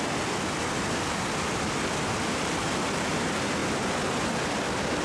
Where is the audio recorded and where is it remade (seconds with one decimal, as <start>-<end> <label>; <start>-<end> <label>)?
0.0-5.0 recorded